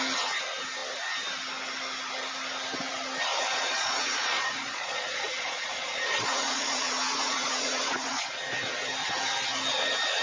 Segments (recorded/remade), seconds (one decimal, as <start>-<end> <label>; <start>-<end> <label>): 0.0-3.5 recorded; 3.5-8.3 remade; 8.3-10.2 recorded